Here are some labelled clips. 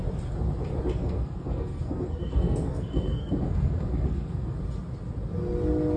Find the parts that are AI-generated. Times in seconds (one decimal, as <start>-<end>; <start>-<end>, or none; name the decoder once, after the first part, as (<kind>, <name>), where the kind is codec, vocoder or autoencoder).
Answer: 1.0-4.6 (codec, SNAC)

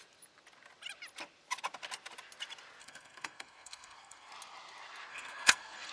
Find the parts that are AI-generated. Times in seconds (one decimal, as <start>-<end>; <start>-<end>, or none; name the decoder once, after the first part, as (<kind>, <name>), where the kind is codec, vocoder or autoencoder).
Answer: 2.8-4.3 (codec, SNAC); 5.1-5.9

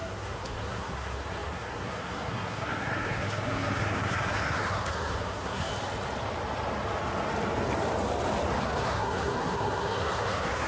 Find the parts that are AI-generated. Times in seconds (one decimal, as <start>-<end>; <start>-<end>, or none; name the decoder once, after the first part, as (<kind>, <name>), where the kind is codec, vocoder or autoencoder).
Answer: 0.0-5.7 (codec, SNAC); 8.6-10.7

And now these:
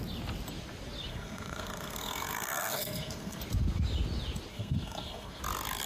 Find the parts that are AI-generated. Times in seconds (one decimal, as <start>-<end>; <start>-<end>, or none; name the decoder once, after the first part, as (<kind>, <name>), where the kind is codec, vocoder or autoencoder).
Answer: 1.1-3.4 (codec, SNAC); 4.5-5.4

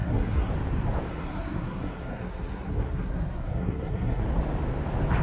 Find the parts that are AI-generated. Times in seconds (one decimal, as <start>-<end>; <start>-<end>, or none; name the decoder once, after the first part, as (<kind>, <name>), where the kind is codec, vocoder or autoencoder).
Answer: 0.0-0.5 (codec, SNAC); 1.1-4.2